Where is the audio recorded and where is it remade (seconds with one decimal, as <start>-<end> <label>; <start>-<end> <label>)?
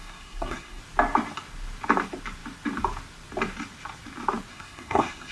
0.0-0.8 remade; 0.8-4.5 recorded; 4.5-5.3 remade